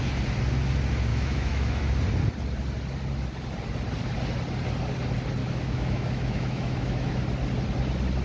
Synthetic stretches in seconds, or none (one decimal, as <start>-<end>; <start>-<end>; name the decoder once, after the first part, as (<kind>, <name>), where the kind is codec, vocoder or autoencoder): 1.1-1.8 (autoencoder, DAC-VAE); 5.4-7.2